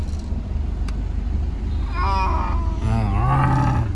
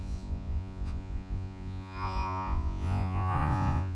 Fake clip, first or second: second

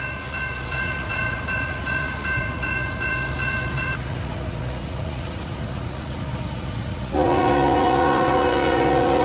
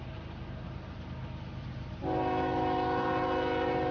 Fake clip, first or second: first